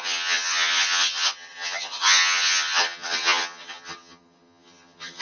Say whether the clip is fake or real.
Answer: fake